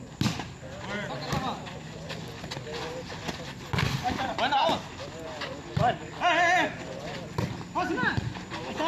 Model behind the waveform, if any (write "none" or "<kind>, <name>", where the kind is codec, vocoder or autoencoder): none